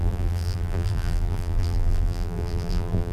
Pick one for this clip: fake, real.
fake